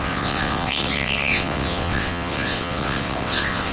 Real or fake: fake